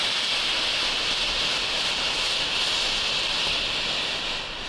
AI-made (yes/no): no